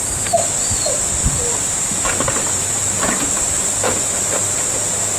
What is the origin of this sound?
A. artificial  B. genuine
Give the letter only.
A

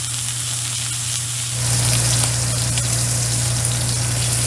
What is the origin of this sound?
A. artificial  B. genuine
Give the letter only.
B